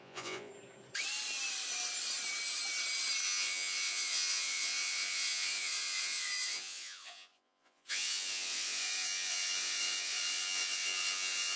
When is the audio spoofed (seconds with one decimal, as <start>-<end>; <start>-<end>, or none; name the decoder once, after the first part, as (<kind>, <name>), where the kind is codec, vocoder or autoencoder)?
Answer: 0.0-0.5 (vocoder, Vocos); 3.2-11.6